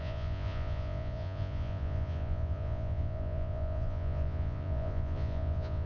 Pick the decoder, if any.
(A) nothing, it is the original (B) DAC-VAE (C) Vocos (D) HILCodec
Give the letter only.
C